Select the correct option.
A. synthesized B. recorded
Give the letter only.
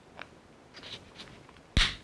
B